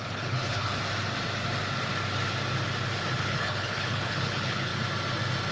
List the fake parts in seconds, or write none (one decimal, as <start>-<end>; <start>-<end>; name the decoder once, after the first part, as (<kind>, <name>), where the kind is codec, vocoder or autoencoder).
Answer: 0.0-0.8 (codec, HILCodec); 3.2-4.7